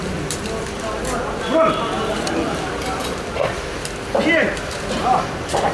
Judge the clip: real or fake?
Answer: real